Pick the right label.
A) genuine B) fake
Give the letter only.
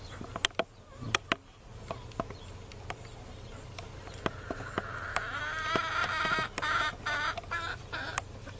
A